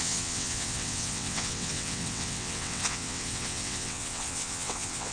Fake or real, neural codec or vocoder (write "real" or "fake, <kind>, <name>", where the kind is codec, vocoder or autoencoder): fake, vocoder, WaveNeXt